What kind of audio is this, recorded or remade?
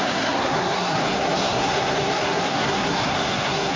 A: remade